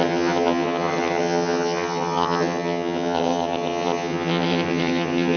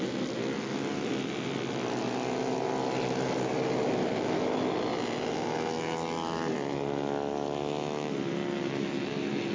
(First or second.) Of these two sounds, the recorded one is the second